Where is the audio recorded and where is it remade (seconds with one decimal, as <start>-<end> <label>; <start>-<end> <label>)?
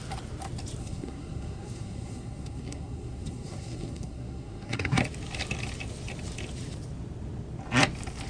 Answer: 0.0-0.8 recorded; 0.8-5.0 remade; 5.0-8.3 recorded